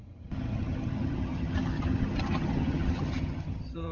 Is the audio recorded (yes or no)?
no